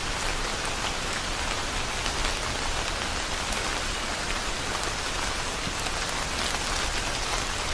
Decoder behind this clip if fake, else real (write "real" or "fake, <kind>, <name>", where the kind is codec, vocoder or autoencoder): real